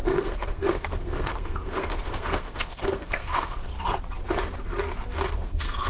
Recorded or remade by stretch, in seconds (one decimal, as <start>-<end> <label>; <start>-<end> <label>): 0.0-3.7 remade; 3.7-5.3 recorded; 5.3-5.9 remade